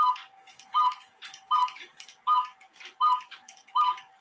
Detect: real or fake fake